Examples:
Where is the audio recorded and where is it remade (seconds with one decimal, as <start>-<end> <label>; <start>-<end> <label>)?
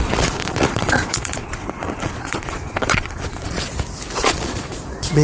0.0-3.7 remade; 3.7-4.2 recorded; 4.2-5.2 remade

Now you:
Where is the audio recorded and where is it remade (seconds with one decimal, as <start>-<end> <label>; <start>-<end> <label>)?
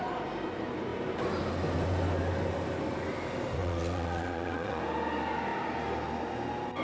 0.0-3.6 recorded; 3.6-4.8 remade; 4.8-6.8 recorded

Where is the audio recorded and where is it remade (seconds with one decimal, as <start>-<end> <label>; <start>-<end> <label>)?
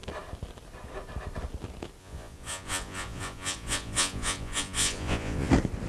0.0-2.0 recorded; 2.0-5.5 remade; 5.5-5.9 recorded